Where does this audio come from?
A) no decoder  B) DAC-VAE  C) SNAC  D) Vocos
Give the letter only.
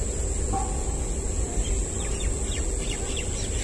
A